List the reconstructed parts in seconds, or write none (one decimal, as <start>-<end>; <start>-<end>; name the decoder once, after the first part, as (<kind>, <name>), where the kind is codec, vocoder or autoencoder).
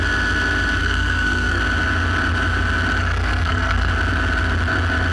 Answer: 0.8-1.6 (codec, SNAC); 3.0-3.9